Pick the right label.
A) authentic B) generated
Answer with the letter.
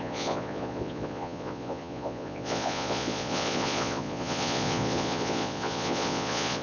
B